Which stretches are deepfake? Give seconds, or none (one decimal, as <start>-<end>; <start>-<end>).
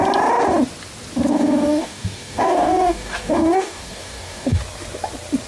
1.3-4.6